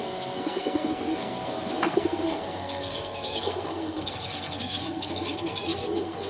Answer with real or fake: fake